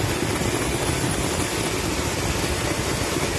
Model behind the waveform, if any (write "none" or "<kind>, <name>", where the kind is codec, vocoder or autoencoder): none